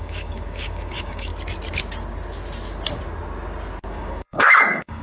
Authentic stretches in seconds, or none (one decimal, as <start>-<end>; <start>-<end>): 1.3-3.9